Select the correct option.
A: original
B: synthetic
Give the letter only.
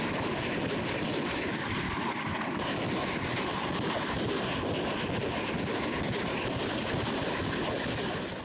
A